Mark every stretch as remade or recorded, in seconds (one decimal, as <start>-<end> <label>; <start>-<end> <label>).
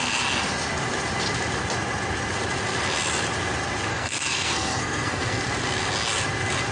0.0-3.9 recorded; 3.9-5.4 remade; 5.4-6.7 recorded